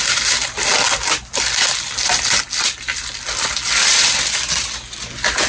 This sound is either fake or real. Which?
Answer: real